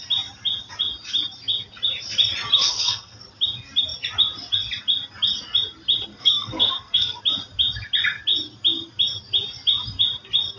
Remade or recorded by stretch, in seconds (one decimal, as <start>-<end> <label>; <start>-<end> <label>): 0.0-2.6 recorded; 2.6-3.2 remade; 3.2-6.1 recorded; 6.1-7.2 remade; 7.2-10.6 recorded